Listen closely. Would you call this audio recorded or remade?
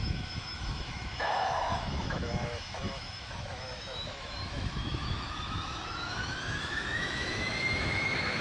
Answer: remade